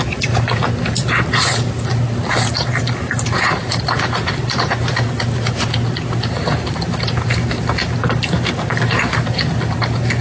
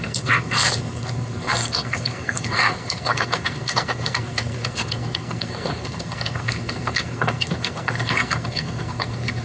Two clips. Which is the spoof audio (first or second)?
second